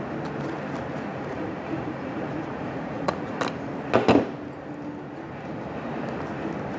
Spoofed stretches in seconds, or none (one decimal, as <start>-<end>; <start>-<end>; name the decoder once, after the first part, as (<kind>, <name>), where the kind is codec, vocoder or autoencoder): 1.1-3.4 (vocoder, Vocos)